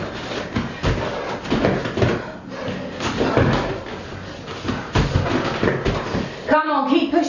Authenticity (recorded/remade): recorded